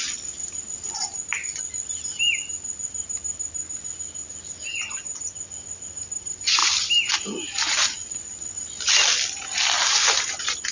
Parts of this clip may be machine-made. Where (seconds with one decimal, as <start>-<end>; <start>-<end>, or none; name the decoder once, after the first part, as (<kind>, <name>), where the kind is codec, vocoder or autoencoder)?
none